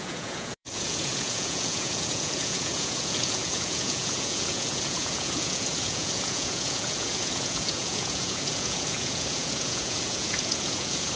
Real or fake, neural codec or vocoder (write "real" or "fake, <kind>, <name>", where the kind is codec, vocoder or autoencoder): fake, vocoder, Vocos